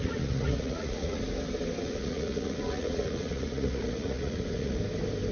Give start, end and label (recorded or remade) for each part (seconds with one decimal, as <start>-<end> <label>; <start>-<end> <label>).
0.0-1.2 remade; 1.2-1.8 recorded; 1.8-4.8 remade; 4.8-5.3 recorded